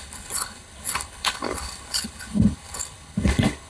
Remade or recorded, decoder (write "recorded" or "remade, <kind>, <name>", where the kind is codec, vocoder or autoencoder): remade, codec, HILCodec